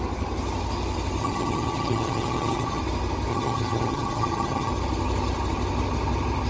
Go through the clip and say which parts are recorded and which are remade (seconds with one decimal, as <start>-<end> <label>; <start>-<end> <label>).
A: 0.0-1.2 recorded; 1.2-2.8 remade; 2.8-3.3 recorded; 3.3-4.7 remade; 4.7-6.5 recorded